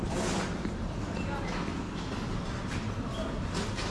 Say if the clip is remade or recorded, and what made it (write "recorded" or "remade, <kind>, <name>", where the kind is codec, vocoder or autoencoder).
recorded